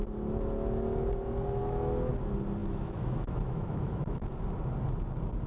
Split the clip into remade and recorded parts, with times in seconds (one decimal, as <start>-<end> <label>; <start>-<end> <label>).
0.0-1.6 recorded; 1.6-2.1 remade; 2.1-2.6 recorded; 2.6-4.3 remade; 4.3-5.5 recorded